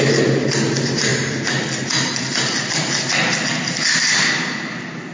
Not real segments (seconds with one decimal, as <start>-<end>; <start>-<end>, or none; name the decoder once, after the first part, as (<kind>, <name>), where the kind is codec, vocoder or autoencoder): none